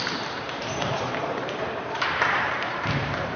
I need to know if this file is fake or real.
fake